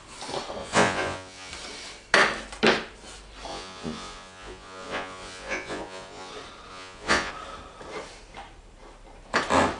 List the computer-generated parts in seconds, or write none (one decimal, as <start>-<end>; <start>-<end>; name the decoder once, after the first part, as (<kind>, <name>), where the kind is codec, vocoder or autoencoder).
0.6-1.5 (vocoder, Vocos); 3.5-6.3; 6.7-7.3